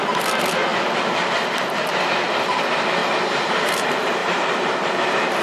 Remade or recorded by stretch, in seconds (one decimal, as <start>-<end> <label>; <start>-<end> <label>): 0.0-3.0 recorded; 3.0-3.8 remade; 3.8-4.2 recorded; 4.2-4.9 remade; 4.9-5.4 recorded